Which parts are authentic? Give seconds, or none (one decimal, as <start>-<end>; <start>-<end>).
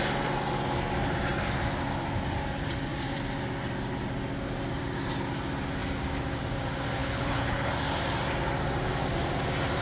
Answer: 0.0-7.0; 7.7-9.8